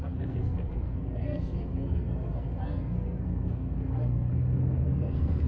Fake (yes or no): yes